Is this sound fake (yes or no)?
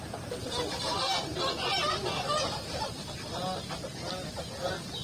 no